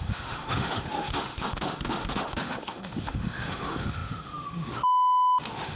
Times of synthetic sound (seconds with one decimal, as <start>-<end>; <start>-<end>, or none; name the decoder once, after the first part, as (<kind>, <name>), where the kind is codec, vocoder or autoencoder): 0.0-5.8 (autoencoder, DAC-VAE)